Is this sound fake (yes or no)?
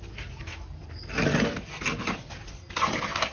no